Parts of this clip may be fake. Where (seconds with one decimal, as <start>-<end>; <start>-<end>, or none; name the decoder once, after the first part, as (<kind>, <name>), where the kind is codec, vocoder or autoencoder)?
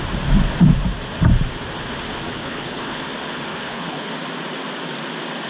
2.4-3.0 (codec, HILCodec); 3.5-4.1